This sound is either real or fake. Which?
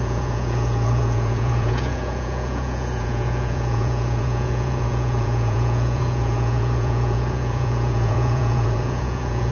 fake